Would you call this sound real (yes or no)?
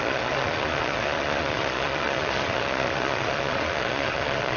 no